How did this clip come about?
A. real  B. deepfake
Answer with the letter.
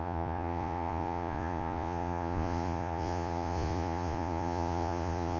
B